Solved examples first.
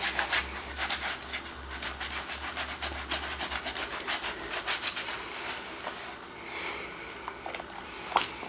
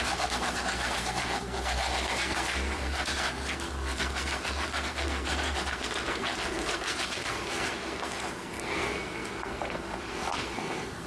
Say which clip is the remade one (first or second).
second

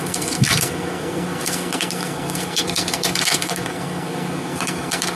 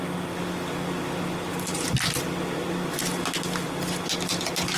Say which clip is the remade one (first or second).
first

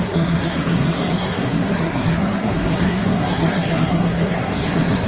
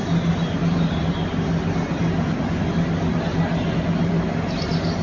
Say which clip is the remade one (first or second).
first